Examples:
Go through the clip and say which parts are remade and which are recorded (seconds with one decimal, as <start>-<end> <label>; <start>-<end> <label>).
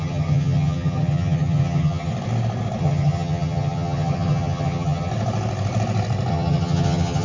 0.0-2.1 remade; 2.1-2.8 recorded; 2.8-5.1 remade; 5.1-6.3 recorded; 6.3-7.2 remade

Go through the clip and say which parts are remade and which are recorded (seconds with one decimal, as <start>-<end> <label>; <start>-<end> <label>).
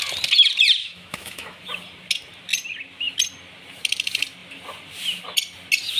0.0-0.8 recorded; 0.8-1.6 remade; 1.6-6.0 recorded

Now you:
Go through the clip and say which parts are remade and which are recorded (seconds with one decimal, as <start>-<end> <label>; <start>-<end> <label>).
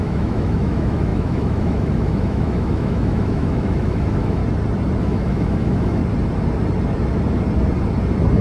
0.0-4.4 remade; 4.4-5.0 recorded; 5.0-6.0 remade; 6.0-8.4 recorded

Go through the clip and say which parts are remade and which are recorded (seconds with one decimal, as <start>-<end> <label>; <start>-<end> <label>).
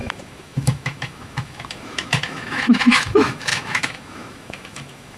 0.0-5.2 remade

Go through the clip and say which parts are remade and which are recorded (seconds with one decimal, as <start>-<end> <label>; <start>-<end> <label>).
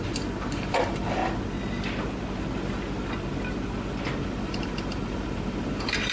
0.0-1.2 remade; 1.2-4.2 recorded; 4.2-6.1 remade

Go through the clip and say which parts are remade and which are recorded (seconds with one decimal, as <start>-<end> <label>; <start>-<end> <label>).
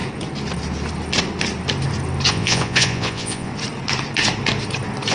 0.0-2.3 recorded; 2.3-3.5 remade; 3.5-5.1 recorded